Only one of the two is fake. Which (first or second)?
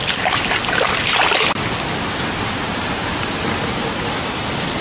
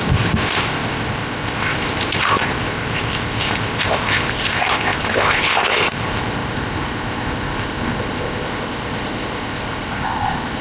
second